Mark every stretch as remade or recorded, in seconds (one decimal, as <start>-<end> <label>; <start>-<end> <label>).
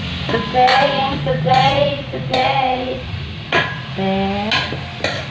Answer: 0.0-0.7 recorded; 0.7-3.9 remade; 3.9-5.3 recorded